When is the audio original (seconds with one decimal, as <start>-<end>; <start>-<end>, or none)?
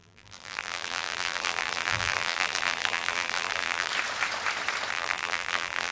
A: 3.9-4.9